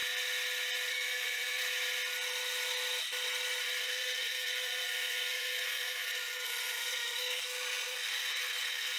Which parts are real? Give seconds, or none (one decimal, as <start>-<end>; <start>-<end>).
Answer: 0.0-0.9; 1.6-3.8